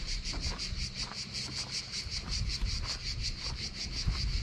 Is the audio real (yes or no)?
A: yes